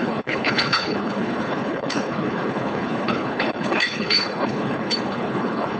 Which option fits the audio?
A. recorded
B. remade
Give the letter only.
B